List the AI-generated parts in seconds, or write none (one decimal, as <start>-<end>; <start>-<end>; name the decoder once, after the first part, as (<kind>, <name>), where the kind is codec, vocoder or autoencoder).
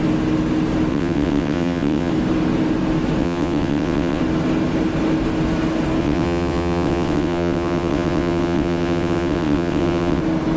0.9-2.1 (vocoder, WaveNeXt); 3.2-4.2; 6.0-10.2